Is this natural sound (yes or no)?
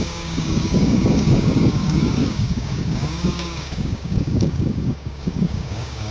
no